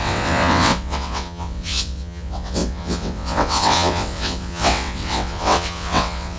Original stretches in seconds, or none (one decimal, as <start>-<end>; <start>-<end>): none